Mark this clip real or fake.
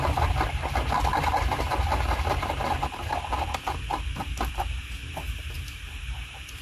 real